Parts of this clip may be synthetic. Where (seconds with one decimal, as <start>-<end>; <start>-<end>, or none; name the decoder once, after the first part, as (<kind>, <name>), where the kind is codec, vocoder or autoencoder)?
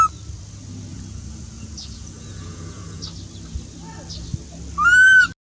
0.9-3.0 (vocoder, Vocos)